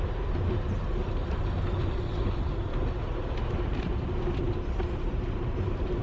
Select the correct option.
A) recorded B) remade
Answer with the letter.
A